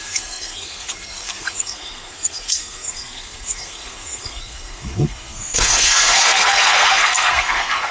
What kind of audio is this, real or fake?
fake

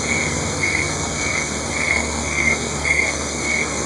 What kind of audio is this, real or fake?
fake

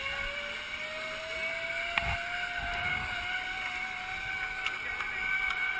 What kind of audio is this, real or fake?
real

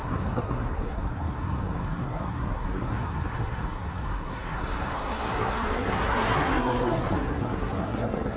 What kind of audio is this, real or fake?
fake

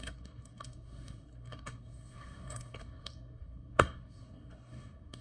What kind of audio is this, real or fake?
fake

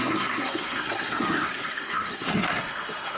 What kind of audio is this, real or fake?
fake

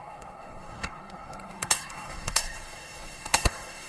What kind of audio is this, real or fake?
fake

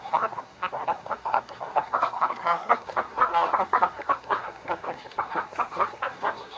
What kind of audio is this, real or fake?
fake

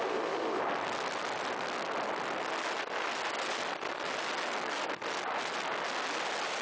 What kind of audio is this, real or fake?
real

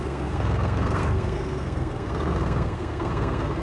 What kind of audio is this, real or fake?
fake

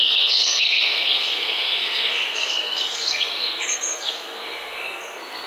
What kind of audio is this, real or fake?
fake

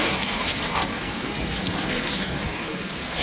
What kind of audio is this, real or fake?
fake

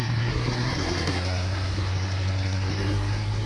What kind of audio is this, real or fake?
fake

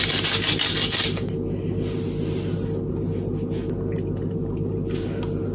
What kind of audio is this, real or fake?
real